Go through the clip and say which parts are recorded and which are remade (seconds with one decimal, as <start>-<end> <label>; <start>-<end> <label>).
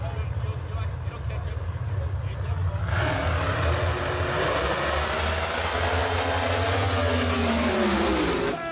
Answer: 0.0-7.4 recorded; 7.4-8.1 remade; 8.1-8.7 recorded